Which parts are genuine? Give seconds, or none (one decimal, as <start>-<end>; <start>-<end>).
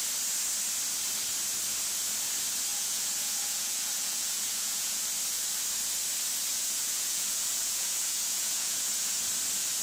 0.0-2.7; 5.0-6.5; 9.3-9.8